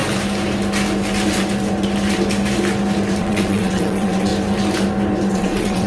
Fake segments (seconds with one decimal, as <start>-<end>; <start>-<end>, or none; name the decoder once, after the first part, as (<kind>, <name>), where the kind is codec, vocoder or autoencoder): 3.2-4.3 (vocoder, WaveNeXt); 5.3-5.9